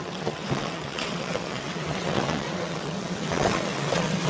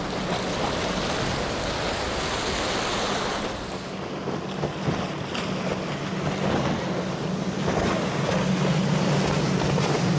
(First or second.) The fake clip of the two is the first